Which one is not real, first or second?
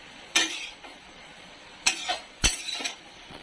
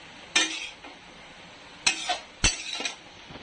first